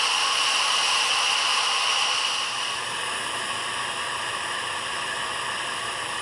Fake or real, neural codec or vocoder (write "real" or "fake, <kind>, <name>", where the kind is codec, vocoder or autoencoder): fake, vocoder, BigVGAN v2